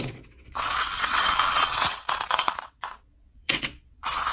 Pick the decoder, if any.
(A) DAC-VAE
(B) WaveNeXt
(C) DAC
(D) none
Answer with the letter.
B